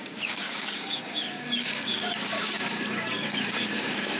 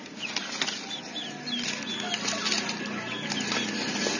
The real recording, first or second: second